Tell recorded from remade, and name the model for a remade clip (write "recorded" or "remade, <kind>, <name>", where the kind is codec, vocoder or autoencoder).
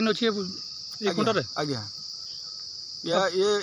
remade, vocoder, BigVGAN v2